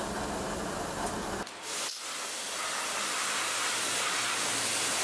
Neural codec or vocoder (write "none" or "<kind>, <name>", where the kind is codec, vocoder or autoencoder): none